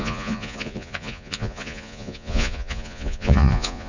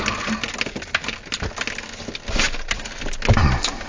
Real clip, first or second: second